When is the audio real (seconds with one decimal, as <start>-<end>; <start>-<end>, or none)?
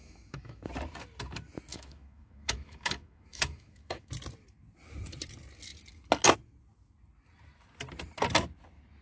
0.7-1.7; 4.1-9.0